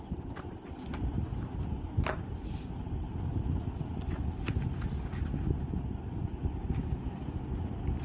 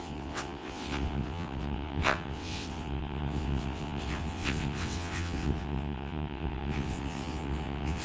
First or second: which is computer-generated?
second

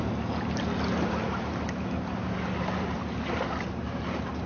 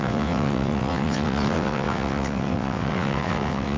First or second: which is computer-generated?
second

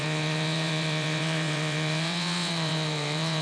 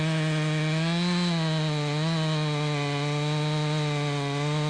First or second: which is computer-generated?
first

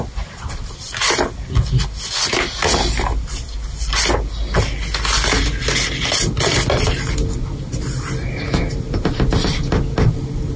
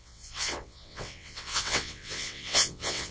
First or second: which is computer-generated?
second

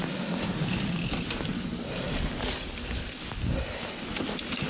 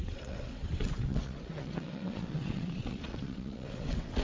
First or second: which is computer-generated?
second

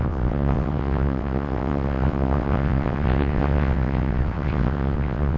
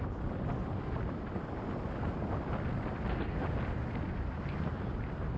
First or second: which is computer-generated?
first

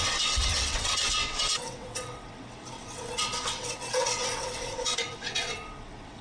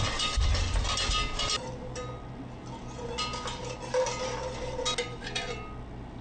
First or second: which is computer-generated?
first